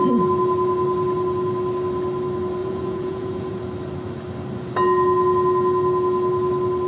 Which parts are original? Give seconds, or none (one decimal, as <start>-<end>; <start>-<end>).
0.0-2.6; 3.6-6.9